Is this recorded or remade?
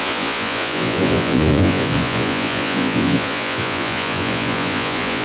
remade